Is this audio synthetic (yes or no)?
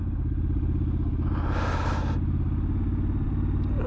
no